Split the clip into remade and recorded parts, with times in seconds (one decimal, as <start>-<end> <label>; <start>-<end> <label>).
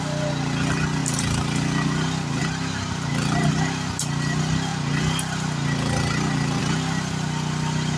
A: 0.0-8.0 recorded